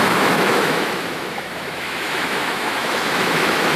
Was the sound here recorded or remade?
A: remade